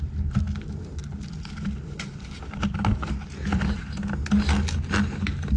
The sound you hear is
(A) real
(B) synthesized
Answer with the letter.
A